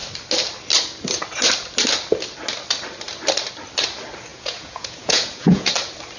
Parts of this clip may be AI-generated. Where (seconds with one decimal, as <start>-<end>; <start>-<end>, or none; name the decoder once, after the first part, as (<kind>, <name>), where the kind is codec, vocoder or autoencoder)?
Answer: 4.3-5.7 (vocoder, Vocos)